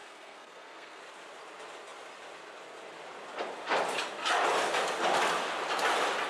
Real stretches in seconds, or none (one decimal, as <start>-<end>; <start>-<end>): 1.0-6.3